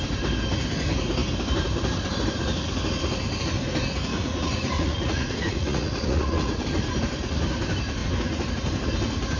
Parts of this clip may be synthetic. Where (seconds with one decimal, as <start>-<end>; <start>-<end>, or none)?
4.1-6.6